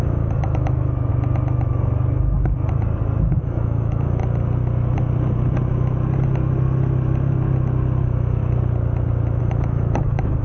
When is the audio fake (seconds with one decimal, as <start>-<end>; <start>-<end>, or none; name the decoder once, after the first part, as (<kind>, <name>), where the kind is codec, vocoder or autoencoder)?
0.0-1.1 (autoencoder, DAC-VAE); 3.3-4.2; 8.0-8.4; 9.4-10.4